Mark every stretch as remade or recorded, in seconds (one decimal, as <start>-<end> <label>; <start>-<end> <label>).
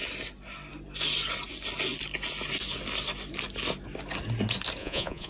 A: 0.0-4.8 recorded; 4.8-5.3 remade